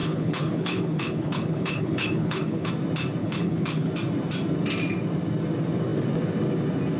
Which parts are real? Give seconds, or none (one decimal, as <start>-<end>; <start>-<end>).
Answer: 2.7-3.2; 3.9-7.0